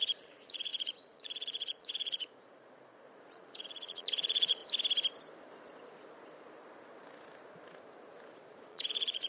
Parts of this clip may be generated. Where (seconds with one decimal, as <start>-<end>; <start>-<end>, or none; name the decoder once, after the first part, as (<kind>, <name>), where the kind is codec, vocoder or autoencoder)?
0.0-4.6 (vocoder, Vocos); 8.7-9.3